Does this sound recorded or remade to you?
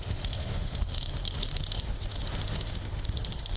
remade